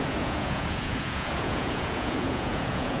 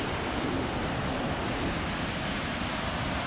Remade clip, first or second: first